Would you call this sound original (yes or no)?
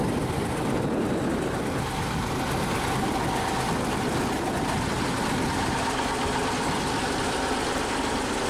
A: yes